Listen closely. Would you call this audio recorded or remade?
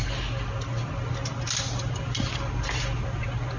recorded